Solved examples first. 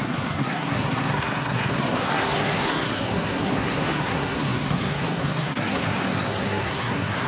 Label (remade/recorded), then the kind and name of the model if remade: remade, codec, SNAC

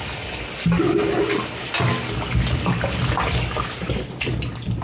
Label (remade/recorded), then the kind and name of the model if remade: recorded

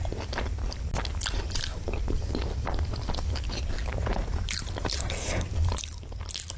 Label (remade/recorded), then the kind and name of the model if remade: recorded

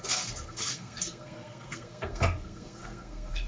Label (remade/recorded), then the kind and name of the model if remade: remade, codec, SNAC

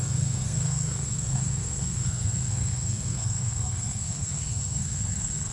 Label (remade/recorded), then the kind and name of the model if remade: remade, codec, SNAC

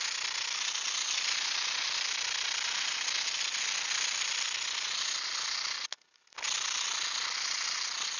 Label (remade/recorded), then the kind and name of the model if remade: recorded